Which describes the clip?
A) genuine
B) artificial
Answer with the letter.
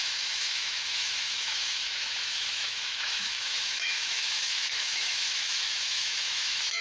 B